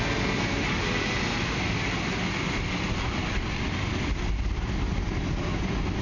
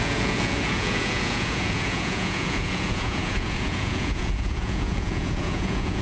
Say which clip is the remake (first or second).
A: second